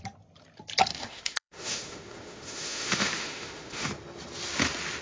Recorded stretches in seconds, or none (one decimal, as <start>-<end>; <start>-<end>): 0.0-0.9; 3.9-5.0